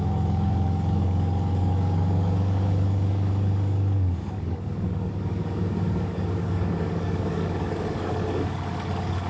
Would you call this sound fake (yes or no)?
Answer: yes